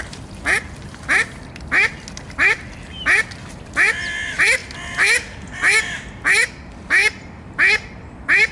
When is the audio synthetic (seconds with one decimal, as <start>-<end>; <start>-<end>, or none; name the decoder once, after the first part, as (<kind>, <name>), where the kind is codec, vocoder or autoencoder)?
none